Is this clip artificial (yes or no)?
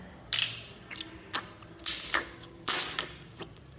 no